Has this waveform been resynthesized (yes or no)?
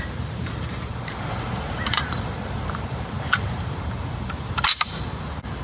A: yes